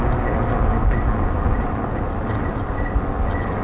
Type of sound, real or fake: real